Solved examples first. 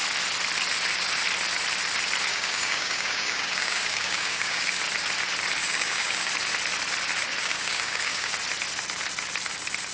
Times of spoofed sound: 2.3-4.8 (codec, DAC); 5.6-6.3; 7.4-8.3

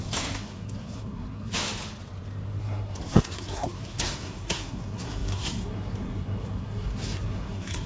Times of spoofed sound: 0.0-1.6 (codec, SNAC); 2.6-7.9

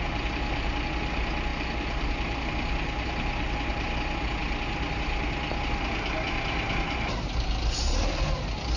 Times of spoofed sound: none

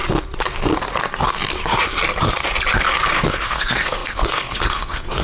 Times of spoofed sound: 3.1-5.2 (codec, SNAC)

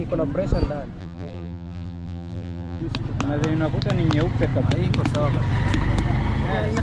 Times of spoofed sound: 1.0-2.8 (vocoder, BigVGAN v2)

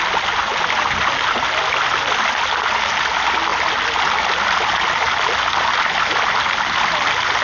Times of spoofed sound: none